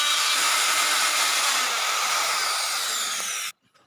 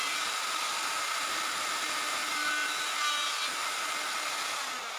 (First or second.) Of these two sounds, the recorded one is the second